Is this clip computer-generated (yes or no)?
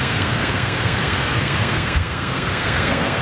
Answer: yes